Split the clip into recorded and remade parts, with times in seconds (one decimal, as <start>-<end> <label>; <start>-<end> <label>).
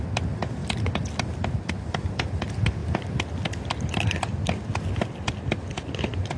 0.0-6.4 recorded